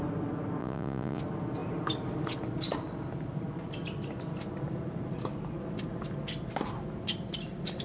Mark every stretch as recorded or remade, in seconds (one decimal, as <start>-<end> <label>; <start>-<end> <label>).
0.0-0.6 recorded; 0.6-1.2 remade; 1.2-7.8 recorded